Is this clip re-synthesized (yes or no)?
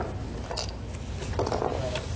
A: no